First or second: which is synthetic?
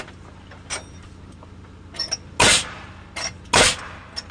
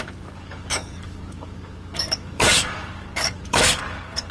second